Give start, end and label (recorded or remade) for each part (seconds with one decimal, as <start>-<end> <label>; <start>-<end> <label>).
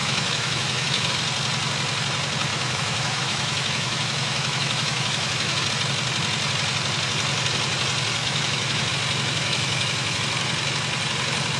0.0-1.1 remade; 1.1-2.5 recorded; 2.5-5.7 remade; 5.7-8.2 recorded; 8.2-8.9 remade; 8.9-9.4 recorded; 9.4-10.2 remade; 10.2-11.6 recorded